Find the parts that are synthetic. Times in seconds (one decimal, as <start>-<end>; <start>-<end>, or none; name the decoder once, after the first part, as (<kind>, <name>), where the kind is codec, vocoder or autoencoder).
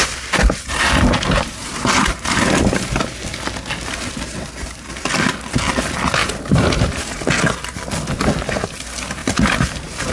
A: 0.0-3.0 (vocoder, BigVGAN v2); 6.2-7.2; 9.2-10.1